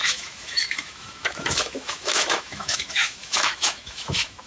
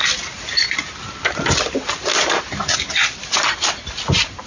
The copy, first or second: first